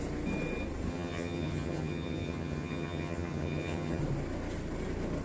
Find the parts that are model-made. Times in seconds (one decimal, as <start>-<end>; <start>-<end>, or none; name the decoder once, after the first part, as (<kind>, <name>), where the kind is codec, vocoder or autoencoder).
0.9-4.0 (vocoder, HiFi-GAN)